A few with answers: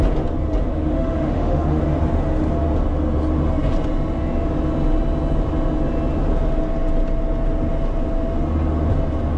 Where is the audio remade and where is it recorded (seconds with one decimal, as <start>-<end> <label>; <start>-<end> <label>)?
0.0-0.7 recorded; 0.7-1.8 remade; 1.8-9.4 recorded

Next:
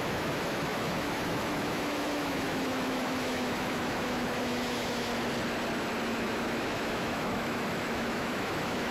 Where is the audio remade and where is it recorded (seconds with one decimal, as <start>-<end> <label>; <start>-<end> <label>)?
0.0-5.1 remade; 5.1-6.1 recorded; 6.1-8.9 remade

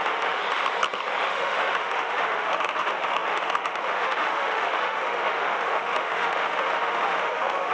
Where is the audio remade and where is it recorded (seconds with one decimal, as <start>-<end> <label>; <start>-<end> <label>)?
0.0-0.4 remade; 0.4-1.3 recorded; 1.3-7.7 remade

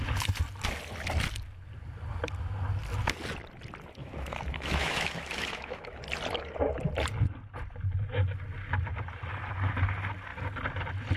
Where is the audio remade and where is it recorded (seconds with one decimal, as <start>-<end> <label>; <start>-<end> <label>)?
0.0-4.0 recorded; 4.0-6.0 remade; 6.0-11.2 recorded